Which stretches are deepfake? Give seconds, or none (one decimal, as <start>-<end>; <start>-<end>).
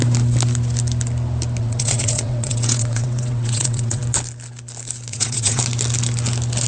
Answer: 1.6-4.0; 5.1-5.6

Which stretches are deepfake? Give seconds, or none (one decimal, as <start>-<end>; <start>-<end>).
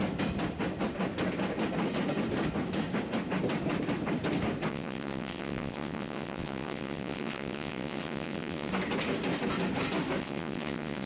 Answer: 4.7-8.7; 10.2-11.1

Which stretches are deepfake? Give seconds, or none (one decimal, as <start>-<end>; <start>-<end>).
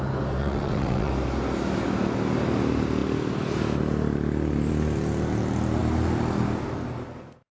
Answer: 0.4-1.1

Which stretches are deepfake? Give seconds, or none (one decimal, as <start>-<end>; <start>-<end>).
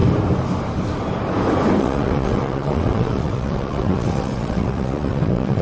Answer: 1.8-5.6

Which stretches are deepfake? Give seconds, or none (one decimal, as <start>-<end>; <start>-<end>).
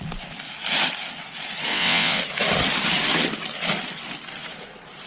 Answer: 1.7-2.2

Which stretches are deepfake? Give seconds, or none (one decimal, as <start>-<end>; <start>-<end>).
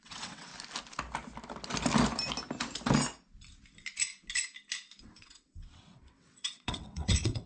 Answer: 0.0-0.5; 5.0-7.5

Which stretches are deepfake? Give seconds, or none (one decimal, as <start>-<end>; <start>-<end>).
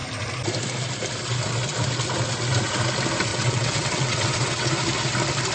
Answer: 3.3-4.7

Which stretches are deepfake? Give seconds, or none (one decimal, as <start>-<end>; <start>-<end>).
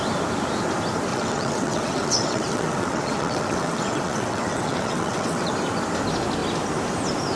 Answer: 1.1-5.5